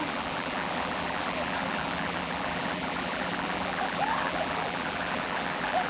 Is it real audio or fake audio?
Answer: fake